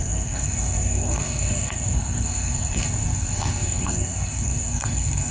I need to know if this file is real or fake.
fake